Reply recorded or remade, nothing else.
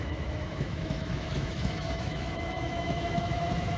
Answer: remade